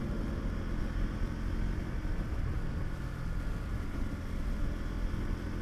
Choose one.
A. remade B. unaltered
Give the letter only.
B